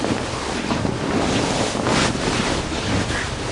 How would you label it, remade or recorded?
recorded